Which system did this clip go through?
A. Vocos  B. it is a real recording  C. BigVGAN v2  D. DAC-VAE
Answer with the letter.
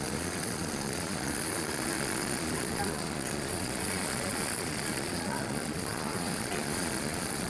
A